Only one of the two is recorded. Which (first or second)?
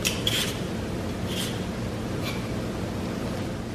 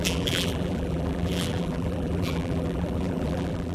first